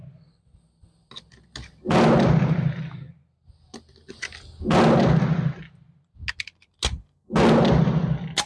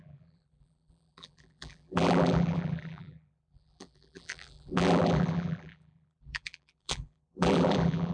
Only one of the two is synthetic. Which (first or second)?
second